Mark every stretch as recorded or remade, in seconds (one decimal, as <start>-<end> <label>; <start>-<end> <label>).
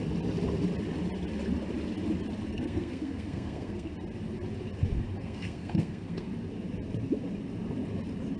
0.0-2.5 recorded; 2.5-3.9 remade; 3.9-5.2 recorded; 5.2-6.3 remade; 6.3-8.4 recorded